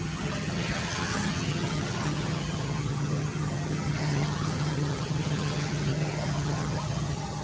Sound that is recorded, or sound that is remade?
remade